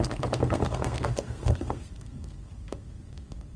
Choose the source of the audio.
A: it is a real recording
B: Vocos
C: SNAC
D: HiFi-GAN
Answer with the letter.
C